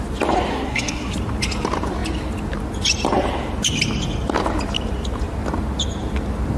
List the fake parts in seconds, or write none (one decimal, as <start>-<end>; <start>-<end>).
0.5-1.1